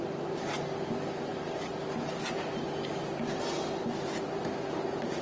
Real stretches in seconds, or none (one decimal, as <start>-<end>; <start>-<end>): 0.0-5.2